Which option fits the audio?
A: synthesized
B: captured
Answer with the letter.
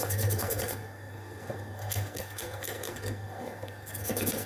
A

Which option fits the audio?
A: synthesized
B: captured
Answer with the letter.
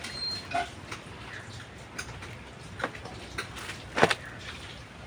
B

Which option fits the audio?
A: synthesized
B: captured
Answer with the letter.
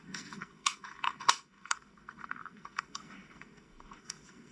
A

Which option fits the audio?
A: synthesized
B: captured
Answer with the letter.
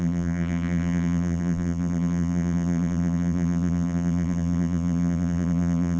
A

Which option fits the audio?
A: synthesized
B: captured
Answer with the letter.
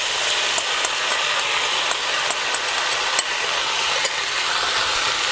B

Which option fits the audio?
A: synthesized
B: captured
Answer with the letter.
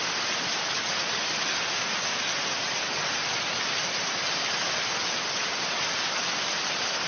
B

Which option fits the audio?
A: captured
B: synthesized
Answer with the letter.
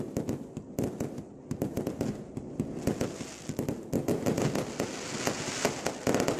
A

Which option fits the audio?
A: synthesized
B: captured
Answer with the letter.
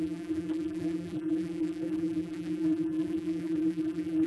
A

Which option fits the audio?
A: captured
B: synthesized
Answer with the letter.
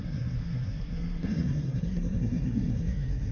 B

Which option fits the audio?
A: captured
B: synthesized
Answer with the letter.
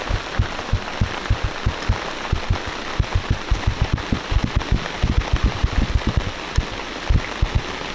A